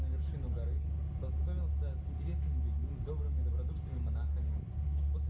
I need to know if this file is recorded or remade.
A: recorded